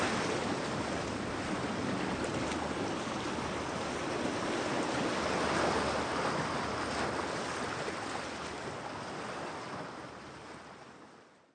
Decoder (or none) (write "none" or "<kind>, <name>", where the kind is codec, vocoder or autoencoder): none